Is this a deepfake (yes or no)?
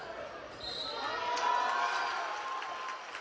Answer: yes